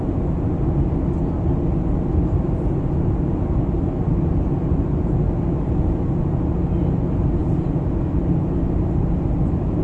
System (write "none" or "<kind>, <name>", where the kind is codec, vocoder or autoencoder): none